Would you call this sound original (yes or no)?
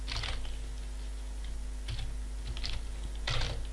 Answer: yes